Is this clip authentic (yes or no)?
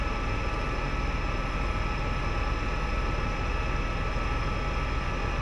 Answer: yes